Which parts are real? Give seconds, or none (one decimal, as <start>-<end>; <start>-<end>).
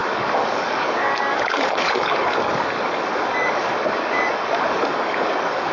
none